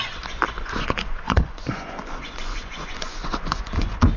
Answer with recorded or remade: remade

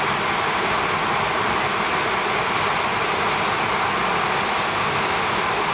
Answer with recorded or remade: recorded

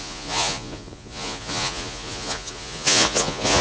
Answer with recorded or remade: remade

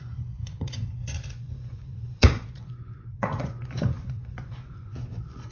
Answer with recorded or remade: remade